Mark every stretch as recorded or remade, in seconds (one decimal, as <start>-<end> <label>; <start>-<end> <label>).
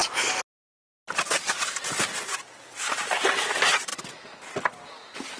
0.0-5.4 recorded